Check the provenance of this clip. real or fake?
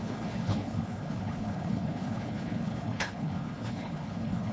fake